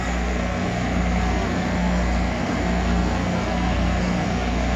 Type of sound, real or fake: fake